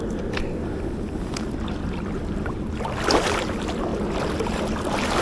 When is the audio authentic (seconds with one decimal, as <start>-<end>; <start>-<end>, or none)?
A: 0.0-5.2